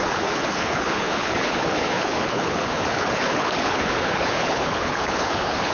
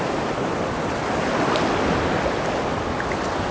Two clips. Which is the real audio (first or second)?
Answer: second